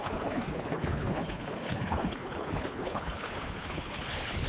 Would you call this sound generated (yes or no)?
yes